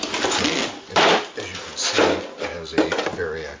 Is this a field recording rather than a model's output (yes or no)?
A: yes